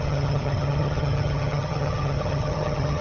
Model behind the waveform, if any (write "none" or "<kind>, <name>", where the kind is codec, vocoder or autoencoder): vocoder, HiFi-GAN